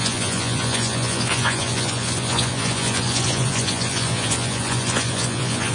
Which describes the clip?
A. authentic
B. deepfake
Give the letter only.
B